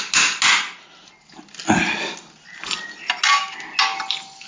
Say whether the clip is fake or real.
real